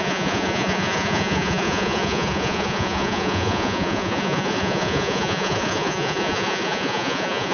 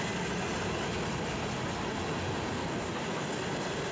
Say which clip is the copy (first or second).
first